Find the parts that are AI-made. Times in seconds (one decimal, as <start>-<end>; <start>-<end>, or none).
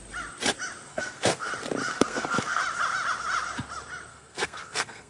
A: 0.9-1.5; 1.9-2.6; 4.1-5.1